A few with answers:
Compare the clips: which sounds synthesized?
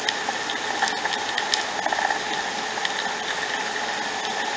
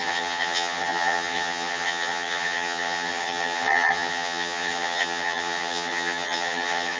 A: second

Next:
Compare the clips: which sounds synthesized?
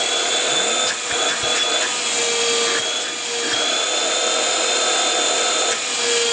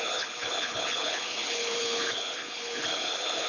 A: second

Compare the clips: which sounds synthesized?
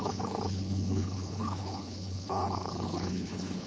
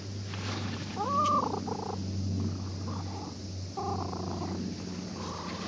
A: first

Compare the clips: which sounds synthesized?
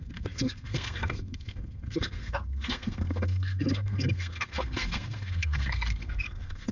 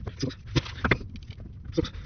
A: first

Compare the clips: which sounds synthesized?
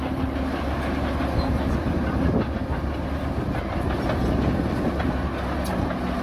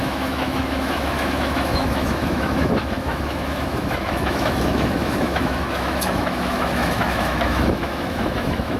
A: second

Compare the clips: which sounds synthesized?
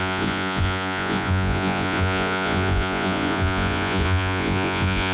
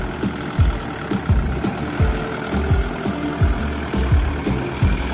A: first